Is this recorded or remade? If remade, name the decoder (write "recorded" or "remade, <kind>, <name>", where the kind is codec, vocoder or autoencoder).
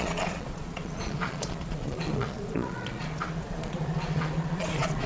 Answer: remade, vocoder, Vocos